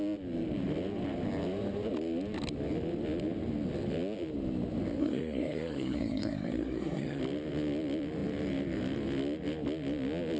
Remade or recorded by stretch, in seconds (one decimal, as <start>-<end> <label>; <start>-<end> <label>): 0.0-5.0 recorded; 5.0-7.2 remade; 7.2-10.4 recorded